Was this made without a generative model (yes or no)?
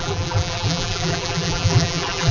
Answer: no